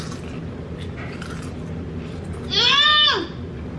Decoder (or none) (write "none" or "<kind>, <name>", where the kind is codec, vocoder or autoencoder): none